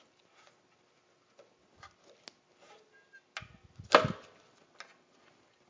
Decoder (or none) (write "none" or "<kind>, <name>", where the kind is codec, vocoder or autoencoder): none